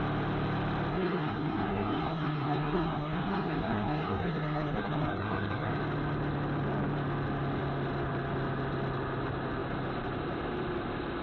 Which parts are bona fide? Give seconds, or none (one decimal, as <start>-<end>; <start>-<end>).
0.0-0.9; 5.7-11.2